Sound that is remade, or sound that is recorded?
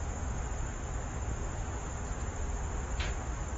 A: recorded